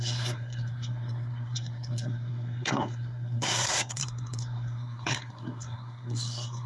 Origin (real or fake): fake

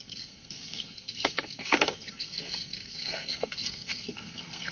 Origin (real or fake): fake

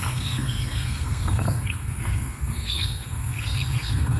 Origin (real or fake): fake